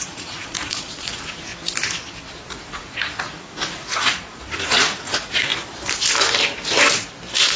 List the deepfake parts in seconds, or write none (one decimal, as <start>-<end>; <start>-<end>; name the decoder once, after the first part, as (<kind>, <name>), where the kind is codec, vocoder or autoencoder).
0.0-1.5 (vocoder, Vocos); 2.3-5.5